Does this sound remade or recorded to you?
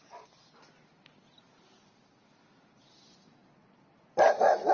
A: recorded